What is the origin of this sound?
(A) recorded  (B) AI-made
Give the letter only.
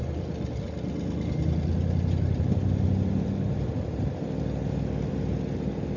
A